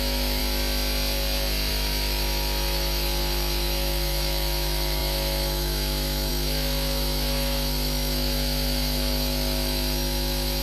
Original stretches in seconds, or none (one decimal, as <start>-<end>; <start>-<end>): 0.4-1.7